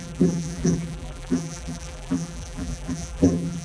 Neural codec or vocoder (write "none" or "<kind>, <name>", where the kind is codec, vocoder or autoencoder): vocoder, BigVGAN v2